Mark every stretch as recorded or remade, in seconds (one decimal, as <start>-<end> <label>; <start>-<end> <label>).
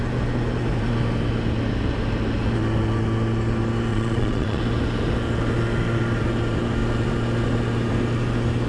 0.0-3.9 recorded; 3.9-4.6 remade; 4.6-8.7 recorded